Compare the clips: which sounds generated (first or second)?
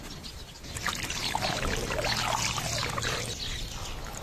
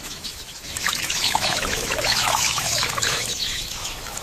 second